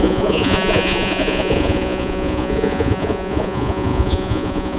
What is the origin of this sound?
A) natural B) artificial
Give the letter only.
B